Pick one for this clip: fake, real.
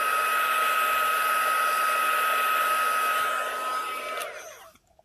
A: real